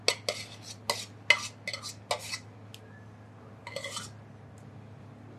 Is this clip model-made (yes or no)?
no